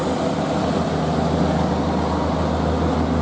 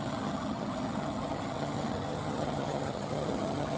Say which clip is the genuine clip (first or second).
first